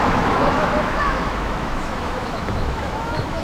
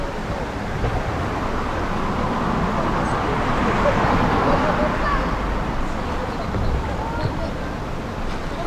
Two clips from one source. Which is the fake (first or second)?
first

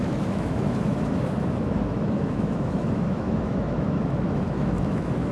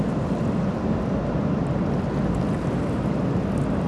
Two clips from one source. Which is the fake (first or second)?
first